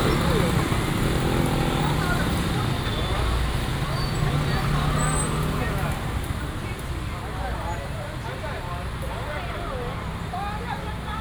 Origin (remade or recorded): recorded